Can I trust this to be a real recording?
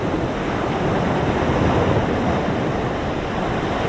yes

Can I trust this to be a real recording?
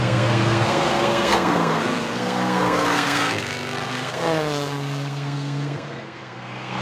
no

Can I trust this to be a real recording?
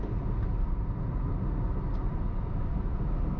yes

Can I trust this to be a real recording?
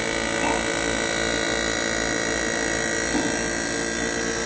yes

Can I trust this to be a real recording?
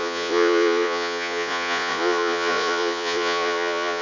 no